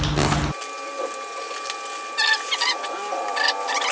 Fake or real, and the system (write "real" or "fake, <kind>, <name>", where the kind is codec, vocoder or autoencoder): real